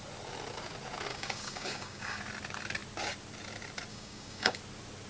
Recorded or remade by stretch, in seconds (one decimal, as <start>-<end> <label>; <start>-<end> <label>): 0.0-1.1 recorded; 1.1-2.2 remade; 2.2-3.9 recorded; 3.9-4.6 remade; 4.6-5.1 recorded